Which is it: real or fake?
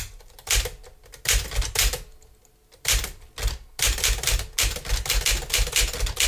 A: real